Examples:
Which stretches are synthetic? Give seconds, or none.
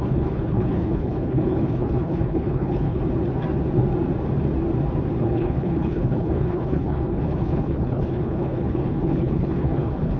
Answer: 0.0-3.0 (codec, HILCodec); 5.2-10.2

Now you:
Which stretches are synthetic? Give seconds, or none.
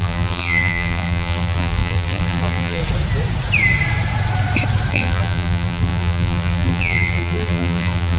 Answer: 0.0-2.8 (vocoder, BigVGAN v2); 4.9-8.2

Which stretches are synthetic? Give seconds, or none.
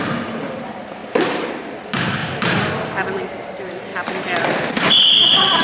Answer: 1.0-1.5 (vocoder, BigVGAN v2); 2.2-2.7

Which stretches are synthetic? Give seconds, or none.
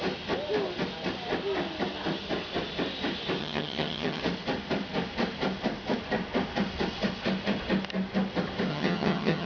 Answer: 3.4-4.2 (vocoder, HiFi-GAN); 8.7-9.5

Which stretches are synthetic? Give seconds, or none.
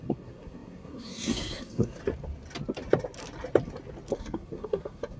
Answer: 0.0-2.0 (codec, SNAC); 4.1-5.2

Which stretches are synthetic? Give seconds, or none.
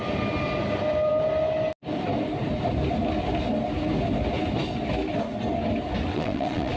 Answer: 6.1-6.8 (vocoder, WaveNeXt)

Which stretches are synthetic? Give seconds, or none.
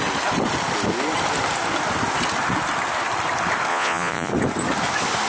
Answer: 3.7-4.3 (vocoder, Vocos)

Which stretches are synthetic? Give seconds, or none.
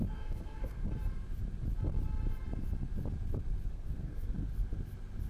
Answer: 0.0-0.8 (codec, SNAC); 3.7-4.5